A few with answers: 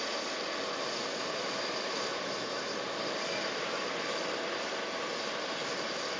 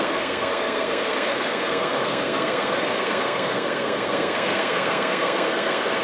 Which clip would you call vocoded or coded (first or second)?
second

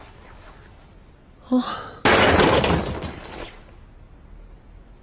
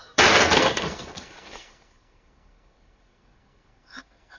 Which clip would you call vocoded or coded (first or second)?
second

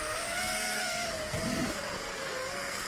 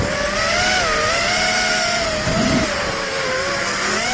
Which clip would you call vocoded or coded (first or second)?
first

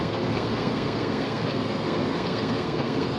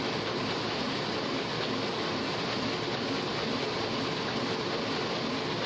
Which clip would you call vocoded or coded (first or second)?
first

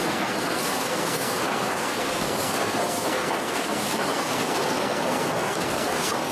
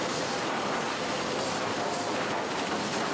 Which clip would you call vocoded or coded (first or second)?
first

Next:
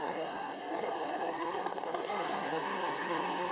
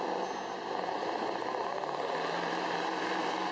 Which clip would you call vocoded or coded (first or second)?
first